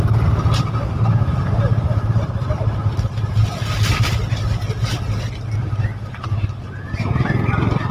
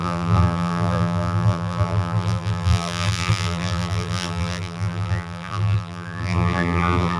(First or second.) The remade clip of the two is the second